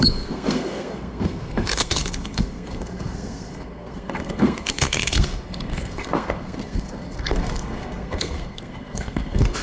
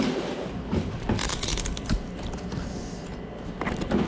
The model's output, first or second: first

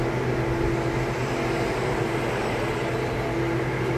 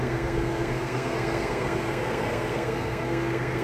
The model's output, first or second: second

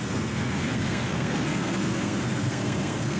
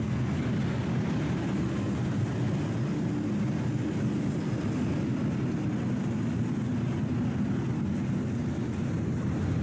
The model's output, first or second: first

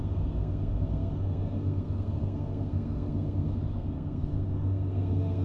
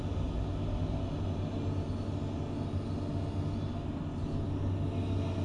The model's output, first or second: first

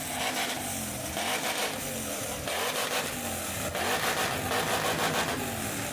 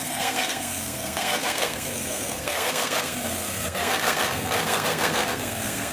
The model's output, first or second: second